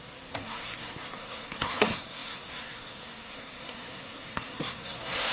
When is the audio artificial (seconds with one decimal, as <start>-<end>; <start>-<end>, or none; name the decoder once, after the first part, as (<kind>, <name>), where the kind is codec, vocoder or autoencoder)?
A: 0.0-5.3 (codec, SNAC)